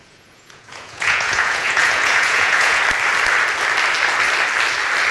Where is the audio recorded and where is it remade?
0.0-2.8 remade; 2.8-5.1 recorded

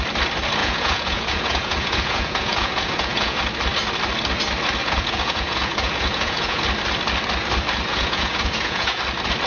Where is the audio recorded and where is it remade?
0.0-0.6 recorded; 0.6-3.4 remade; 3.4-4.8 recorded; 4.8-6.6 remade; 6.6-7.9 recorded; 7.9-9.0 remade; 9.0-9.5 recorded

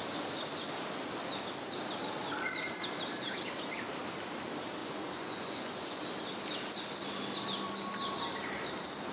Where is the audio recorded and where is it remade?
0.0-4.8 recorded; 4.8-6.0 remade; 6.0-9.1 recorded

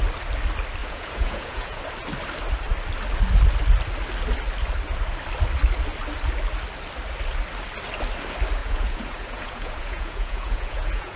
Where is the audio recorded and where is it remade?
0.0-0.8 recorded; 0.8-1.8 remade; 1.8-8.6 recorded; 8.6-11.2 remade

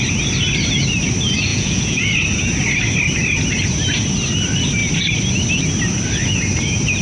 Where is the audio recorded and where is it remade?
0.0-1.5 recorded; 1.5-2.1 remade; 2.1-7.0 recorded

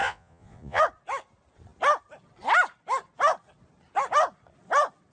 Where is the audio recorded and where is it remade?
0.0-0.8 remade; 0.8-5.1 recorded

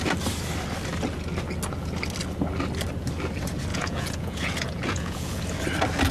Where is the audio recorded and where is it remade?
0.0-3.7 recorded; 3.7-5.4 remade; 5.4-6.1 recorded

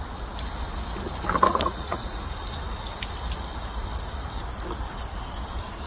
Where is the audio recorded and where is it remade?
0.0-1.5 recorded; 1.5-2.2 remade; 2.2-5.9 recorded